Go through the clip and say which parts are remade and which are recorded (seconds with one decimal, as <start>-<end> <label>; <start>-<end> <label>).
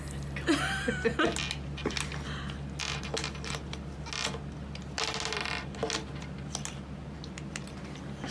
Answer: 0.0-8.3 recorded